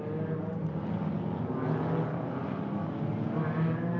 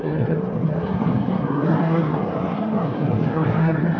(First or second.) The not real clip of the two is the second